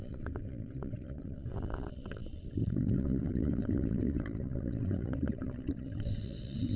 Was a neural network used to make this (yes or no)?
yes